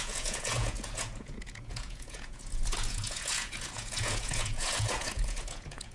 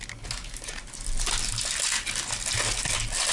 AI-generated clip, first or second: first